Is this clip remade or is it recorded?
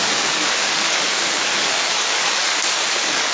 remade